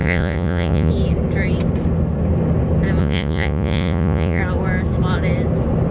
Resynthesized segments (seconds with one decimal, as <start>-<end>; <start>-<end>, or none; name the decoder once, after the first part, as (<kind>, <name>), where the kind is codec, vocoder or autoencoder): 0.0-0.9 (vocoder, Vocos); 3.0-4.4